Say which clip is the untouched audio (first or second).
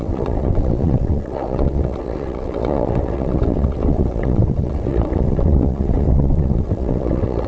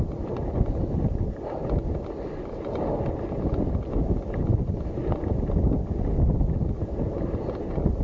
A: second